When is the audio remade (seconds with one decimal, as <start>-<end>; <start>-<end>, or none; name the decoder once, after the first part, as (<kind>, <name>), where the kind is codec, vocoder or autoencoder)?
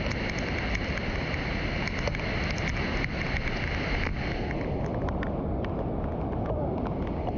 none